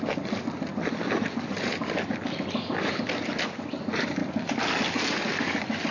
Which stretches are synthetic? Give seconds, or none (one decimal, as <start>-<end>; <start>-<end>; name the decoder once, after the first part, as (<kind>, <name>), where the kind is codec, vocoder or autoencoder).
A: none